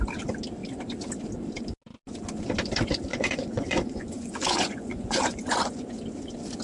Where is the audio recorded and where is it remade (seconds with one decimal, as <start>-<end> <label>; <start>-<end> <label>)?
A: 0.0-3.1 recorded; 3.1-5.9 remade; 5.9-6.6 recorded